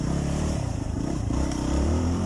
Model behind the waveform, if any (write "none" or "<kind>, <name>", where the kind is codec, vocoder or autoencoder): vocoder, BigVGAN v2